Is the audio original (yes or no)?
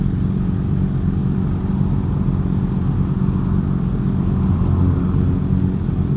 yes